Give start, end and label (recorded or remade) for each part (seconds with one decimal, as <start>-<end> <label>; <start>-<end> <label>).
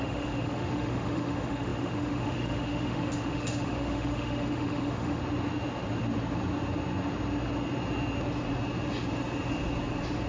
0.0-5.2 remade; 5.2-10.3 recorded